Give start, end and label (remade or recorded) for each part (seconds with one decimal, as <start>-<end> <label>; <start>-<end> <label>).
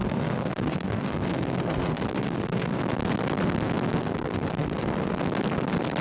0.0-2.8 remade; 2.8-4.0 recorded; 4.0-5.2 remade; 5.2-6.0 recorded